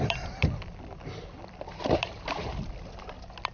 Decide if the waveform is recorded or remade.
remade